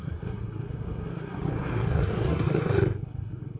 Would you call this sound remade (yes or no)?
yes